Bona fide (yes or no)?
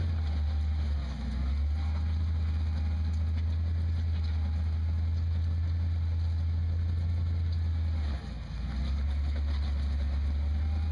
yes